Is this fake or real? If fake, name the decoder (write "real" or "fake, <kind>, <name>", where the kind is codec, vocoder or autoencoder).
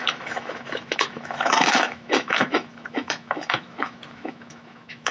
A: fake, autoencoder, DAC-VAE